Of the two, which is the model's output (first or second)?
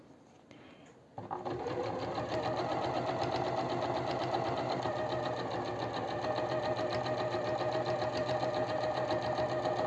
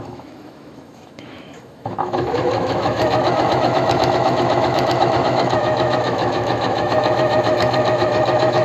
second